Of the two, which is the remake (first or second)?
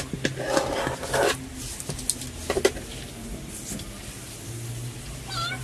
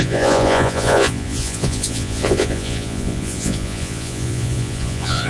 second